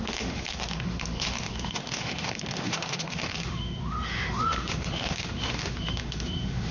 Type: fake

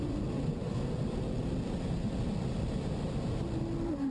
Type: real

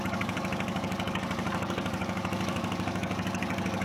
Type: fake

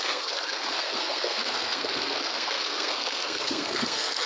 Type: fake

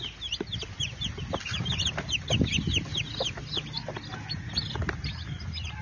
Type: real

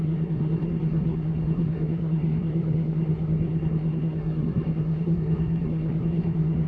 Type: fake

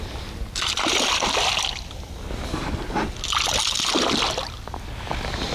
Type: real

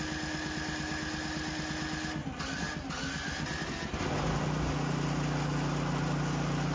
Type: real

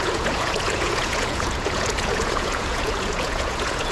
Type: fake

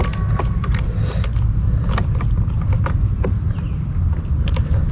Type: real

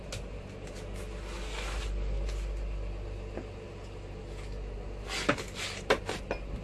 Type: real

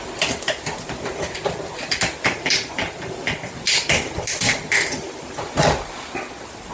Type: real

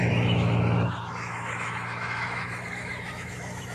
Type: fake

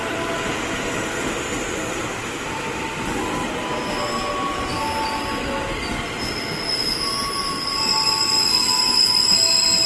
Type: real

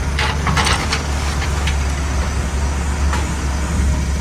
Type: real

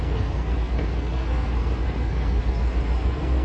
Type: fake